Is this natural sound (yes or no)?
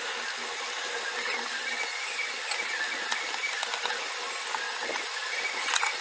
yes